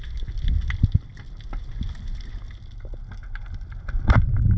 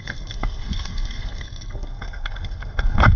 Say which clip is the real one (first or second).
first